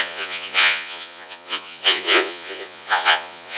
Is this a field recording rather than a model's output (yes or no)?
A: no